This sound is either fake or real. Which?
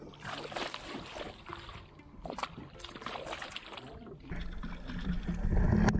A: real